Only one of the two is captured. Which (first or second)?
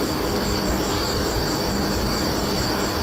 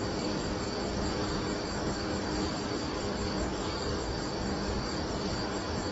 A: first